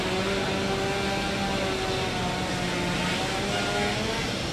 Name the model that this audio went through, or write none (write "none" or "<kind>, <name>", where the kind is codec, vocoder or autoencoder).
none